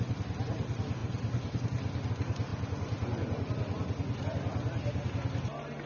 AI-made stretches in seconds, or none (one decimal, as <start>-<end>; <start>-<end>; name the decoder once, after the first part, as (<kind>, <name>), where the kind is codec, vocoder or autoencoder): none